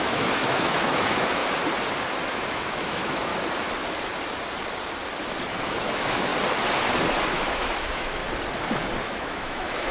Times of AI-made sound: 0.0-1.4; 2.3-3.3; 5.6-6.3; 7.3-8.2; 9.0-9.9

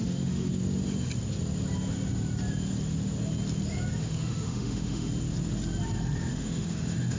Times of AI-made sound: 0.0-0.5; 4.0-5.1; 6.3-7.2

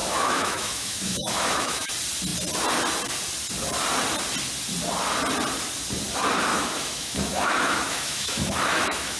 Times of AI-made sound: 0.0-1.9; 6.5-9.2

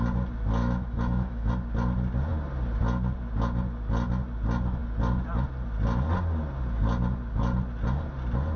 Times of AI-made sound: 0.6-1.5

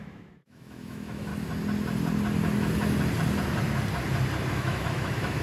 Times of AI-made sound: 0.0-1.3; 4.5-5.4

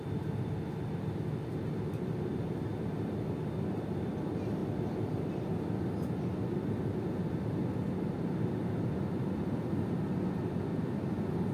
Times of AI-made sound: none

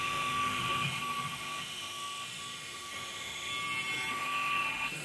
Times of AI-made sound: 0.0-3.5; 4.1-5.0